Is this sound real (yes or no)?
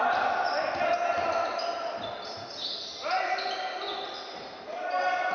yes